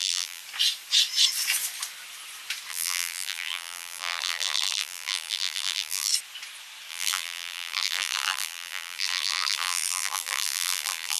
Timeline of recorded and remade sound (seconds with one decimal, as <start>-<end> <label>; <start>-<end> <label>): 0.0-0.4 remade; 0.4-2.7 recorded; 2.7-6.1 remade; 6.1-6.9 recorded; 6.9-11.2 remade